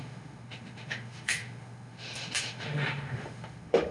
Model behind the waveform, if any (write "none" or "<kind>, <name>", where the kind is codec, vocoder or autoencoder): autoencoder, DAC-VAE